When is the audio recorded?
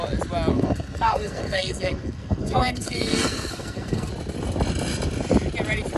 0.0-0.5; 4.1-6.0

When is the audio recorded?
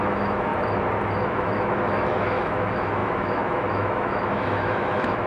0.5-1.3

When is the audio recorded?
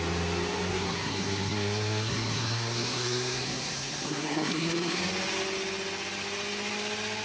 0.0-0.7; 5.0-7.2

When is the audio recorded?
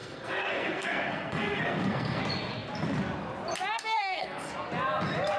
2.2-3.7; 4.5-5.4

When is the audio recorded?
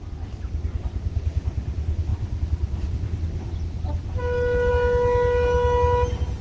0.0-6.4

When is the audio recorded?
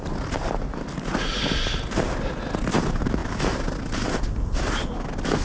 0.0-5.4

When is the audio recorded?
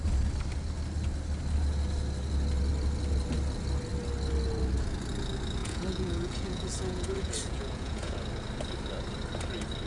0.0-5.6; 8.2-9.9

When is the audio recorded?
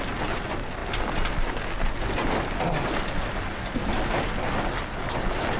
0.0-5.6